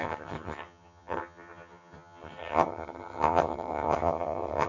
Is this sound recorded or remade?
remade